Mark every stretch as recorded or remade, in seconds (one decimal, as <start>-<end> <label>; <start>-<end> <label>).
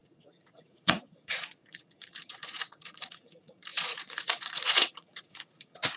0.0-6.0 remade